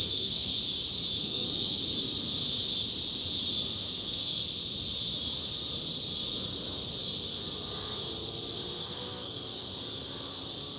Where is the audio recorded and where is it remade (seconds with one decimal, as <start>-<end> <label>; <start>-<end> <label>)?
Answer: 0.0-0.5 remade; 0.5-1.2 recorded; 1.2-1.8 remade; 1.8-3.9 recorded; 3.9-4.4 remade; 4.4-8.8 recorded; 8.8-9.7 remade; 9.7-10.8 recorded